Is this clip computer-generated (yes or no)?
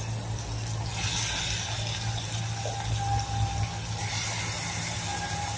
no